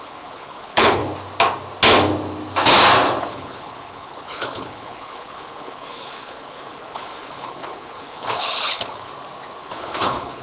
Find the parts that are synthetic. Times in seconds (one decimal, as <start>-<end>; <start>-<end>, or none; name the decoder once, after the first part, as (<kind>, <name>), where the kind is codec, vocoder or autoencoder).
0.0-1.0 (codec, HILCodec); 3.2-9.1; 9.6-10.4